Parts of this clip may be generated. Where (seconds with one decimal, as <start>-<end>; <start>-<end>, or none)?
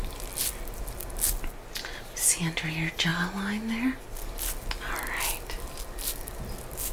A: none